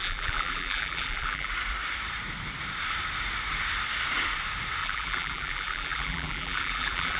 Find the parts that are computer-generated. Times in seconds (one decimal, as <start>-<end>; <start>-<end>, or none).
0.0-1.5; 4.8-7.2